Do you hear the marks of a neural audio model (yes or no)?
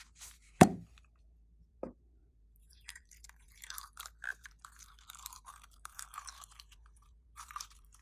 yes